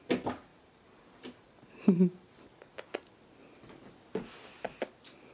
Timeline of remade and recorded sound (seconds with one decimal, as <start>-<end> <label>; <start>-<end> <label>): 0.0-0.5 recorded; 0.5-2.3 remade; 2.3-5.3 recorded